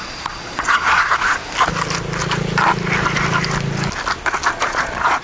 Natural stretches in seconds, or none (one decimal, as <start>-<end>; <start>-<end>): 1.4-4.5